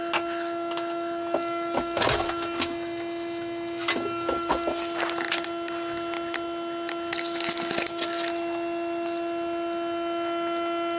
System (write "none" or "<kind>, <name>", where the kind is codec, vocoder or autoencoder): none